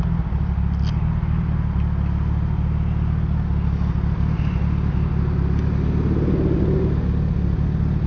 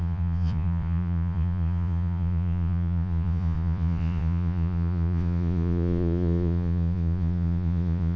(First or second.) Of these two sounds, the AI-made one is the second